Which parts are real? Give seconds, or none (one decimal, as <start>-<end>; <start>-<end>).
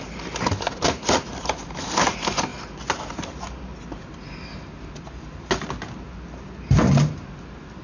0.0-7.8